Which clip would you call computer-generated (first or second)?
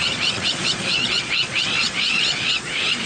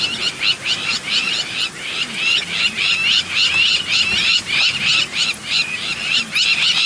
first